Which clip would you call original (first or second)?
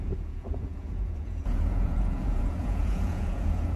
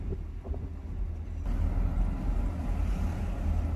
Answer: second